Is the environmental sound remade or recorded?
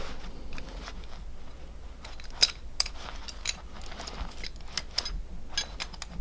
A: recorded